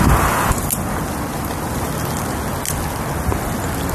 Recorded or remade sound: recorded